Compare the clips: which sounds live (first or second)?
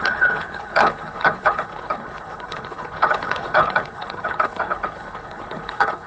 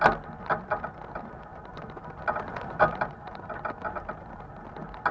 second